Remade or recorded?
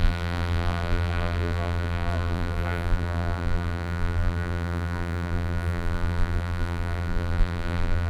remade